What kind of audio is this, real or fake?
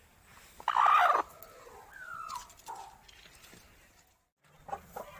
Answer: real